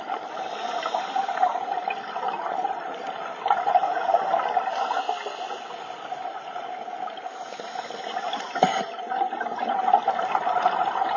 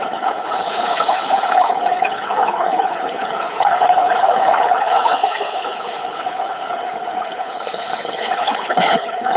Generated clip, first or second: second